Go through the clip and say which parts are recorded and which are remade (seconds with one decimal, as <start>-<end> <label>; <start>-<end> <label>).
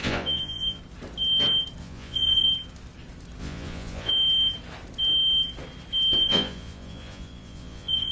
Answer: 0.0-0.8 remade; 0.8-1.8 recorded; 1.8-2.5 remade; 2.5-3.4 recorded; 3.4-4.1 remade; 4.1-6.2 recorded; 6.2-8.1 remade